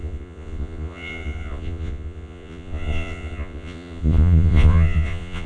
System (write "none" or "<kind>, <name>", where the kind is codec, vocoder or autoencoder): vocoder, Vocos